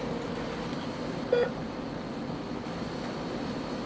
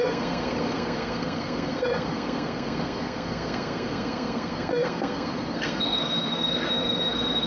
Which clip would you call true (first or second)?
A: first